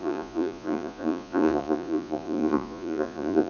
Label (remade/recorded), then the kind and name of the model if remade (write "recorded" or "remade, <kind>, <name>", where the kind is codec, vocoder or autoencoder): remade, vocoder, Vocos